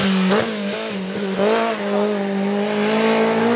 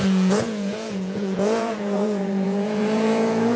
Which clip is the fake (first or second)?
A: second